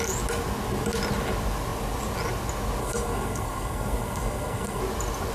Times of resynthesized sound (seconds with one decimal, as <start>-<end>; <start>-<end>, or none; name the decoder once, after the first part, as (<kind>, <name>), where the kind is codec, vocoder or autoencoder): 2.8-4.8 (codec, SNAC)